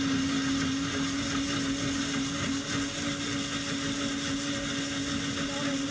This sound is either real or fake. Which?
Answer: real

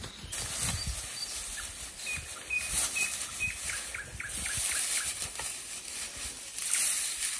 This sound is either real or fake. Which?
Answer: real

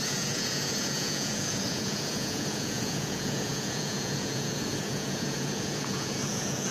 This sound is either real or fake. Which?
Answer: fake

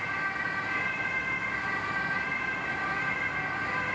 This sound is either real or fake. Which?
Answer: real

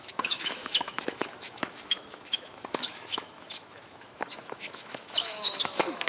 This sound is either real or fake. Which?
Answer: fake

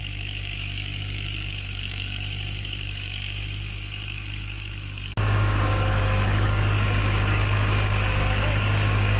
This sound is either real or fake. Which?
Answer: fake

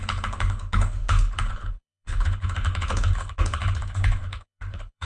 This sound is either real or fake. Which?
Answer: fake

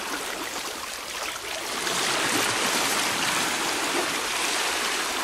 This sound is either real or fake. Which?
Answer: real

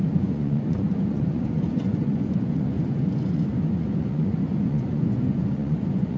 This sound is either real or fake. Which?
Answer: fake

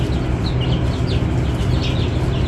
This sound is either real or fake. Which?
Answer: real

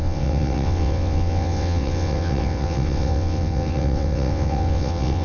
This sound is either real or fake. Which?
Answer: fake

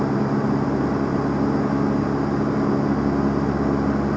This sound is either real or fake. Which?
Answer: real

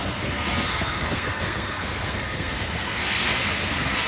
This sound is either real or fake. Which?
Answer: fake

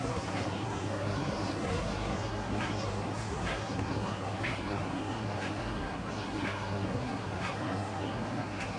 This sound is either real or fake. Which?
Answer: fake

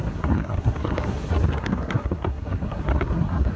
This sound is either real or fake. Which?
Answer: fake